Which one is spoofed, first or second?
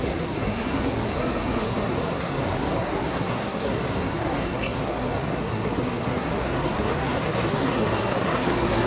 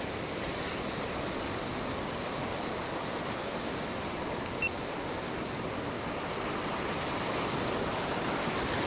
first